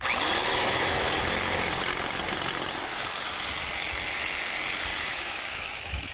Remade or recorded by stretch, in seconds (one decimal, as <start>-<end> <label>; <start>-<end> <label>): 0.0-0.5 recorded; 0.5-1.0 remade; 1.0-4.9 recorded; 4.9-6.1 remade